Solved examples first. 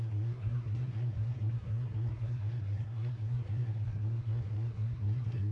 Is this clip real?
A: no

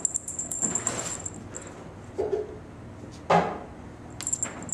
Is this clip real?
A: yes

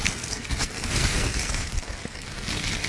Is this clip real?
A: no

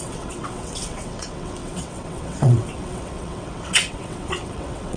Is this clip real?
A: no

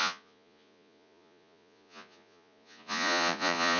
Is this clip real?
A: no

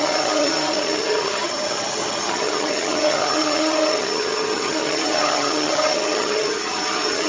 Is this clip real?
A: no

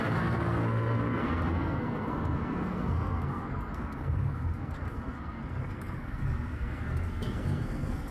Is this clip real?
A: no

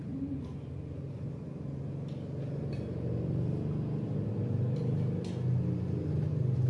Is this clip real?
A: yes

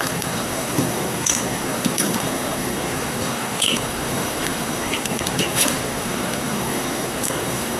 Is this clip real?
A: no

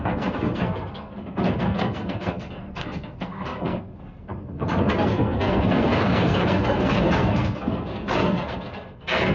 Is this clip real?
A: no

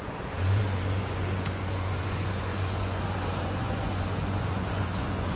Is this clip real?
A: no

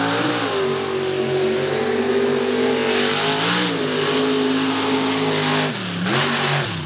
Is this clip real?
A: yes